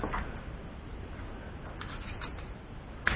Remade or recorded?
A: recorded